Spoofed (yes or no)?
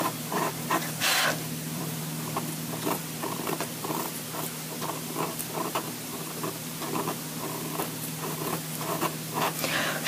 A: yes